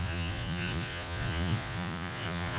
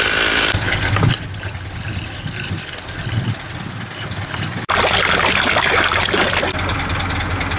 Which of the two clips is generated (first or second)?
first